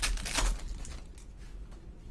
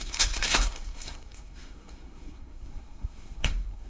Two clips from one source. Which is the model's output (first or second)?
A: second